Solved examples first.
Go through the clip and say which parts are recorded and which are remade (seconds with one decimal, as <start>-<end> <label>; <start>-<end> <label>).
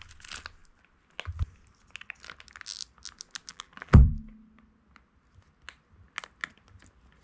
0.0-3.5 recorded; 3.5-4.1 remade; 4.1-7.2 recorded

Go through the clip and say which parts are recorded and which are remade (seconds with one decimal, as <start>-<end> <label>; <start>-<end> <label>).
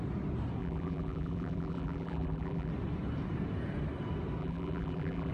0.0-0.6 recorded; 0.6-2.7 remade; 2.7-4.4 recorded; 4.4-5.3 remade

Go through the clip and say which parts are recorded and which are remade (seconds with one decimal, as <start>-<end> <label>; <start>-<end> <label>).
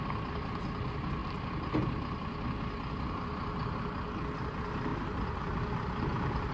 0.0-6.5 recorded